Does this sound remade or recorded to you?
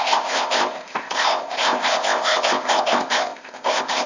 remade